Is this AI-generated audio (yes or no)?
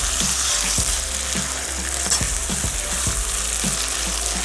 no